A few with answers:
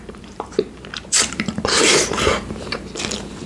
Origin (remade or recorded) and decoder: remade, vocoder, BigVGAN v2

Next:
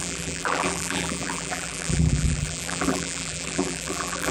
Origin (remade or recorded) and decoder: remade, vocoder, BigVGAN v2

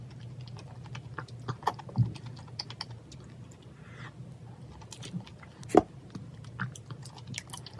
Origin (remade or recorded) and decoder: recorded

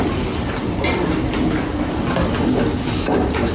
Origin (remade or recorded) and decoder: recorded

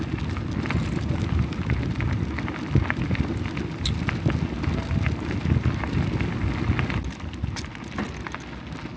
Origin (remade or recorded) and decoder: recorded